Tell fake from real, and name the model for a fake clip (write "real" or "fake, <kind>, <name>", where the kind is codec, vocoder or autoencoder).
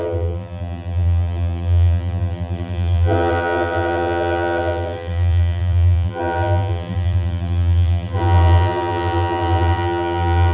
fake, vocoder, BigVGAN v2